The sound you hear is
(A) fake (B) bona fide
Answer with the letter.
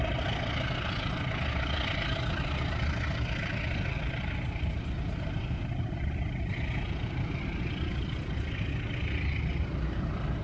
B